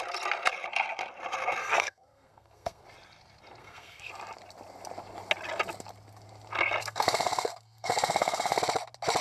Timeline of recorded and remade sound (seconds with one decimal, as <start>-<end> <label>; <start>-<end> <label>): 0.0-1.6 recorded; 1.6-2.8 remade; 2.8-3.6 recorded; 3.6-4.1 remade; 4.1-6.8 recorded; 6.8-8.6 remade; 8.6-9.2 recorded